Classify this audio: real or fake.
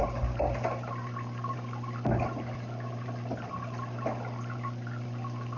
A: real